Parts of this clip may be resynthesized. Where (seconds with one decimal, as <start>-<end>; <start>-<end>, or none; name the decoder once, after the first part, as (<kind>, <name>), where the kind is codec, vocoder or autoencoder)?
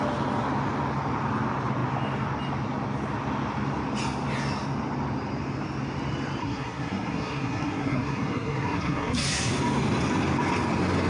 6.4-9.5 (codec, SNAC)